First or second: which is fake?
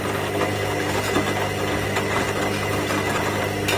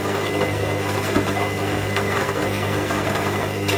second